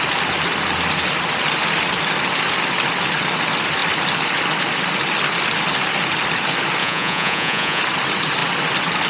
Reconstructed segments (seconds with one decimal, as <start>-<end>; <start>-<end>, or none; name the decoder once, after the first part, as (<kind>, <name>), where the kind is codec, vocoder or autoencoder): 6.8-7.8 (vocoder, Vocos)